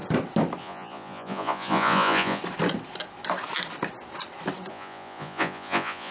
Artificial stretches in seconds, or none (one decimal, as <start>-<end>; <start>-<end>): 0.6-2.4; 4.7-6.1